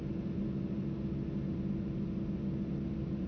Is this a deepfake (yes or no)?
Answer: no